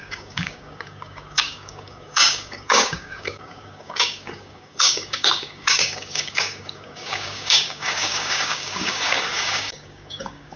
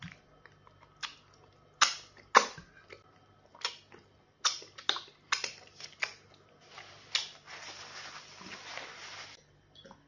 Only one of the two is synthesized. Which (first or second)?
first